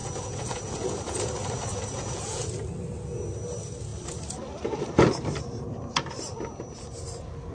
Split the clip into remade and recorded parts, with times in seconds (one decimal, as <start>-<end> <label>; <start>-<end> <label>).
0.0-1.2 remade; 1.2-1.7 recorded; 1.7-2.4 remade; 2.4-7.5 recorded